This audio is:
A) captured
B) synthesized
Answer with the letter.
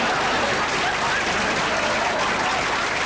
A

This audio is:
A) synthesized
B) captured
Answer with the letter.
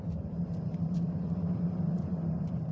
B